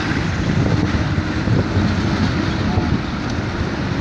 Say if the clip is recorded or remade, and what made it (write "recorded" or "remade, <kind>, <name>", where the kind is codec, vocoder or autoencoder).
recorded